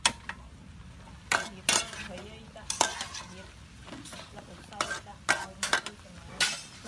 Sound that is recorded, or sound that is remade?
recorded